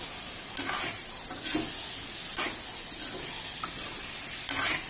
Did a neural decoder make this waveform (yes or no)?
no